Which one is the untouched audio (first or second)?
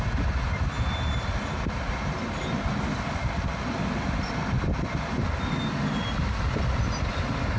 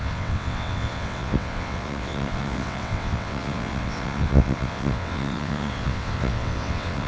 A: first